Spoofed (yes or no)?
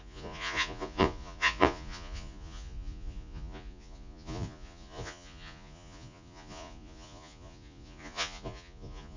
yes